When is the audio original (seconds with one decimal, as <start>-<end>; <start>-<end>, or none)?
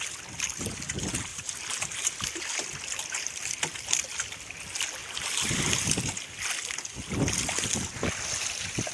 0.0-1.3; 2.4-5.0; 5.9-8.9